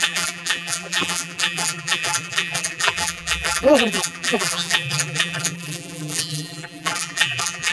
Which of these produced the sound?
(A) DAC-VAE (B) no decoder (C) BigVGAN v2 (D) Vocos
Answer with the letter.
C